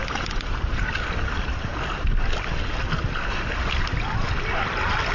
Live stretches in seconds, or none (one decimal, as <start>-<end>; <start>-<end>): 0.0-5.1